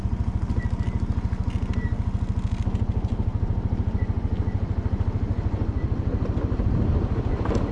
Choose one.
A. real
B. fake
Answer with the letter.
A